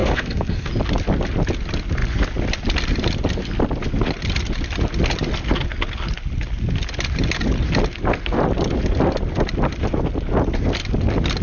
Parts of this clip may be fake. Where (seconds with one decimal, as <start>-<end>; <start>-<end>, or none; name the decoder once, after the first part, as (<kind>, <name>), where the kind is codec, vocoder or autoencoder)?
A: 0.0-0.7 (codec, SNAC)